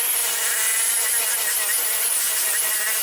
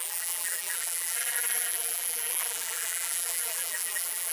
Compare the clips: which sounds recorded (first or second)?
first